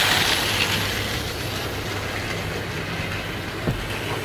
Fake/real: real